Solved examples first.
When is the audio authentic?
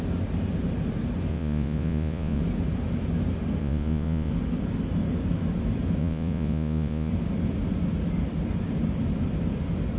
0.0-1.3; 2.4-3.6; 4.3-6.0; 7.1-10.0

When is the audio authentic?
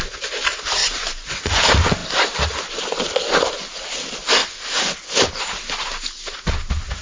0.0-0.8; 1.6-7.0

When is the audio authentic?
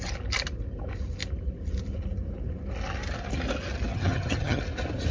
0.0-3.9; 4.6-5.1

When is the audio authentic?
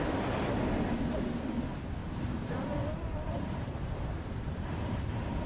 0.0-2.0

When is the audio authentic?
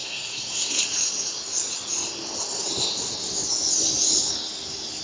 0.8-5.0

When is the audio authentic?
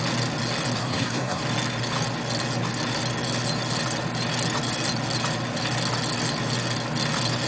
0.0-0.8; 1.4-7.5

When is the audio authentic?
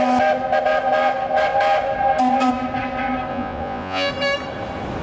0.0-3.3; 4.1-5.0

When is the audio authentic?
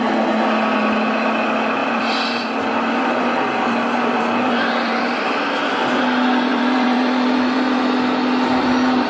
0.0-1.8; 5.6-6.5; 7.8-9.1